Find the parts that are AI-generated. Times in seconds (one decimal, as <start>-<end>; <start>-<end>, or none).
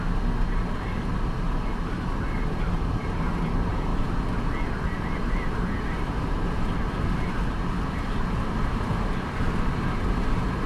none